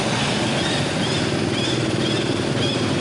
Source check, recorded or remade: recorded